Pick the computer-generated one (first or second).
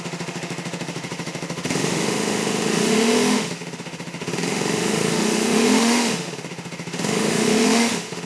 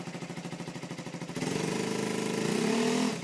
first